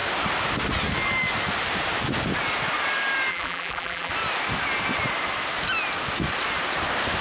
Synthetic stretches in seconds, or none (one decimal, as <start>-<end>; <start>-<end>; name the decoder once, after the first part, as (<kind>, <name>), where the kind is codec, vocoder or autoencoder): 3.3-4.1 (vocoder, BigVGAN v2)